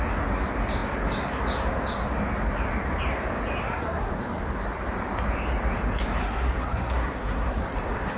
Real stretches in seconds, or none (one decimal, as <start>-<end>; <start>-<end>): 0.0-3.6; 4.1-6.2; 7.6-8.2